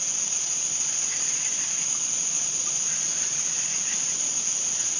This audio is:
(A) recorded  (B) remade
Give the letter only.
B